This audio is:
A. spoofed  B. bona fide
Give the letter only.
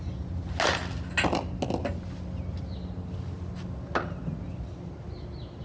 B